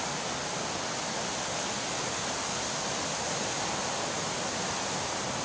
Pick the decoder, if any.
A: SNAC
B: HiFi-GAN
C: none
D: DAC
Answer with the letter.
C